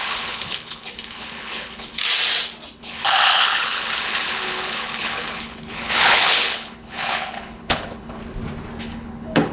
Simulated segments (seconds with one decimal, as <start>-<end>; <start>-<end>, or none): 0.0-1.9; 2.8-8.2; 8.8-9.5